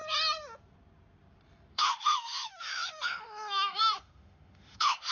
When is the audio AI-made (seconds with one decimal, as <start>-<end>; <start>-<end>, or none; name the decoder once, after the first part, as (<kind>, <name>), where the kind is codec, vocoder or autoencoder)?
1.7-5.1 (autoencoder, DAC-VAE)